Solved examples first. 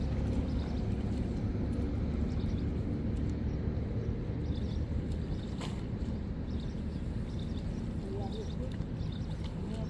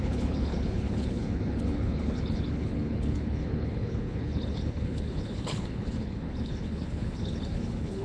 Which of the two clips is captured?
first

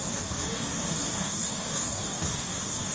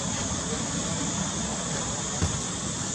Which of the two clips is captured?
second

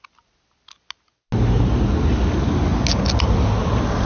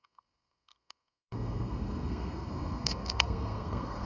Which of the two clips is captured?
first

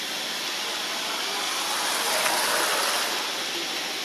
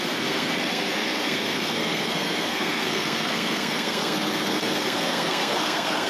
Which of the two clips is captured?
first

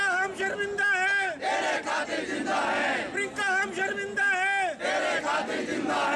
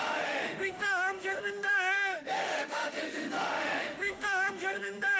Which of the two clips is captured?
first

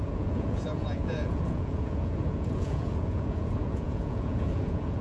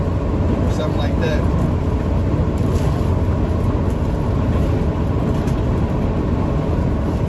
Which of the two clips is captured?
second